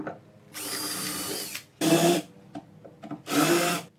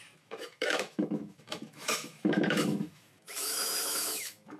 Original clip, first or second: first